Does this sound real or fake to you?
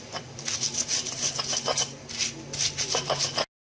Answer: real